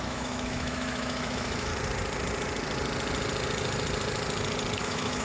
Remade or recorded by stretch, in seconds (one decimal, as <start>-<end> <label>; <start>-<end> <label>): 0.0-1.7 remade; 1.7-4.8 recorded; 4.8-5.2 remade